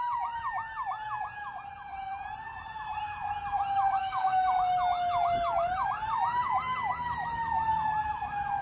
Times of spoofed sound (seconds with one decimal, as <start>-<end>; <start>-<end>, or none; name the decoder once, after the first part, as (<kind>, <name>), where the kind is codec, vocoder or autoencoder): 4.0-4.5 (codec, DAC)